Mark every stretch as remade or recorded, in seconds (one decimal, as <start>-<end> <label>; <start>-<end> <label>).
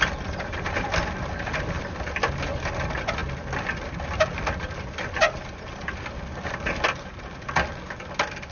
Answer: 0.0-8.5 recorded